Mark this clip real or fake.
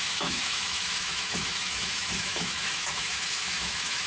fake